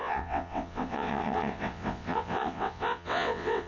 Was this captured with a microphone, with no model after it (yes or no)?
no